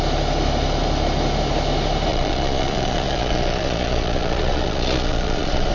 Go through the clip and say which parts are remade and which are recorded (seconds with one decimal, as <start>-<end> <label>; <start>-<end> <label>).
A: 0.0-2.1 recorded; 2.1-5.7 remade